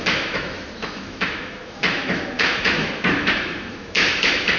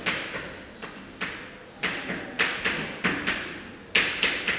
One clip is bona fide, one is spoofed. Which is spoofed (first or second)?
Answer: first